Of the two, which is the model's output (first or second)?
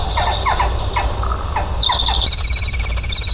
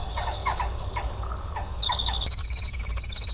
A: second